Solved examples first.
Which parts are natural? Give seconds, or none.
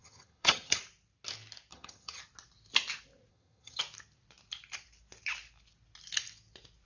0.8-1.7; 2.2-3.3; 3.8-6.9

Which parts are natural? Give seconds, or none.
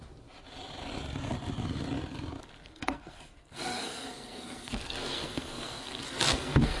0.0-2.6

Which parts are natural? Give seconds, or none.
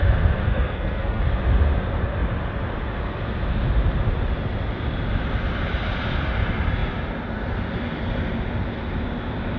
0.0-0.4; 1.2-9.6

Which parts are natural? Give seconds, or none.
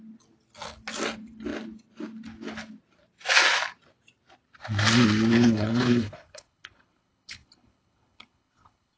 0.0-5.3